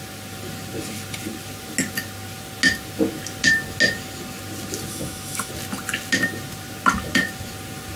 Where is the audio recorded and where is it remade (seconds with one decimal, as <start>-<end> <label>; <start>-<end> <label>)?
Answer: 0.0-4.9 recorded; 4.9-5.5 remade; 5.5-8.0 recorded